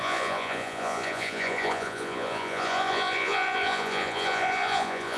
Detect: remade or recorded remade